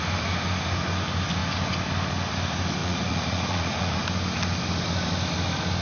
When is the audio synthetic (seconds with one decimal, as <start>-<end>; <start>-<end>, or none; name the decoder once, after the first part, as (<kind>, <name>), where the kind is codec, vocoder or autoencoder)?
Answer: 2.8-4.0 (vocoder, Vocos)